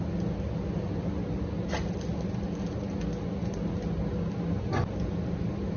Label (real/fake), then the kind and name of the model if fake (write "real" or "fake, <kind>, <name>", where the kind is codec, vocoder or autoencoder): real